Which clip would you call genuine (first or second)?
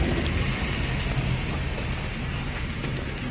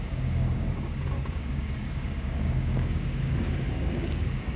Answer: first